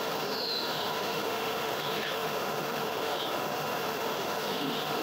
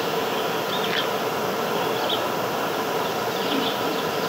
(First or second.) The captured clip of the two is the second